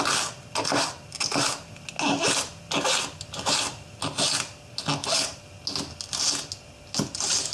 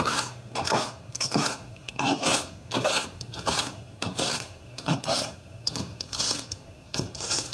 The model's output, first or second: second